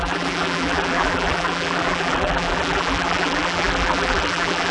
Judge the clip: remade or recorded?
remade